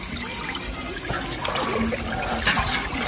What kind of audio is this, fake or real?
real